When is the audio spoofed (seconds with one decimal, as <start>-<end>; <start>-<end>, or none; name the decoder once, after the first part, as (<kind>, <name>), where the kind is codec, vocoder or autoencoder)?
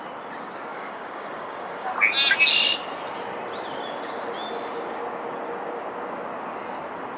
0.7-1.9 (codec, DAC)